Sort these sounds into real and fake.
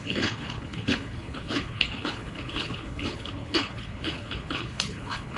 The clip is fake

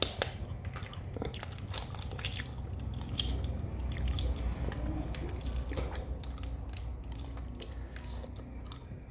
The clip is real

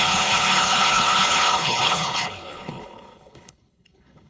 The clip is fake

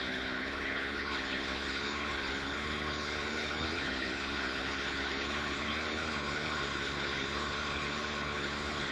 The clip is fake